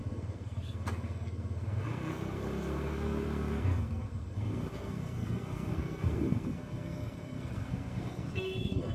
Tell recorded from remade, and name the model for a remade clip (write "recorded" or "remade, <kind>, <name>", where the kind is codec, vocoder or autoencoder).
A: remade, codec, SNAC